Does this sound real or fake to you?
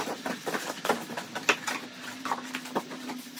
real